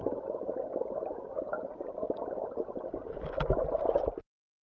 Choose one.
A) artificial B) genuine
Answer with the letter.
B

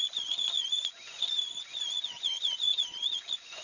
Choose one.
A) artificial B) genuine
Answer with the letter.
A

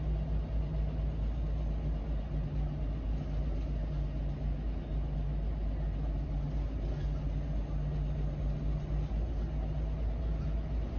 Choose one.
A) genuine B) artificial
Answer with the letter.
A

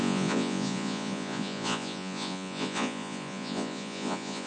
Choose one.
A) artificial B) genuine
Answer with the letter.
A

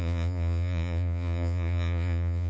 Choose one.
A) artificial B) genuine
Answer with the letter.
A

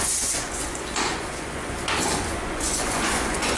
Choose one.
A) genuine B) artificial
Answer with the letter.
B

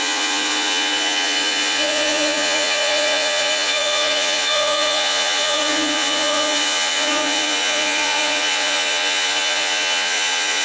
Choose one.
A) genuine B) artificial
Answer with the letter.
B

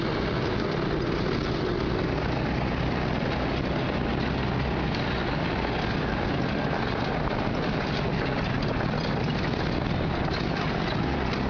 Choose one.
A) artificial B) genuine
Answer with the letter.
B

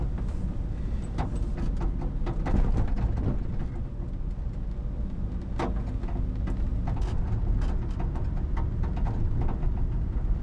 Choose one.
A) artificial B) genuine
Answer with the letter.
B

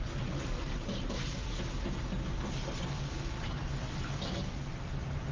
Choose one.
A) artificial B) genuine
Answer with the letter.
B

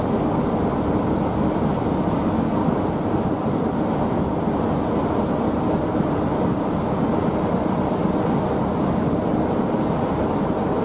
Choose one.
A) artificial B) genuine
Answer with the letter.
B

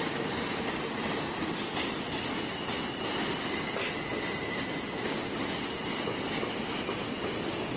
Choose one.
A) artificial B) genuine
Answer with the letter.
B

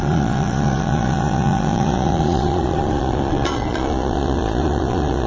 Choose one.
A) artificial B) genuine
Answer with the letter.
A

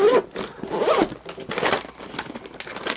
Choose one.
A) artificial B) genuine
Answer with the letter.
B